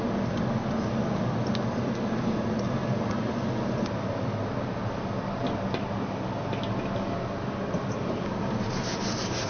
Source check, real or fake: real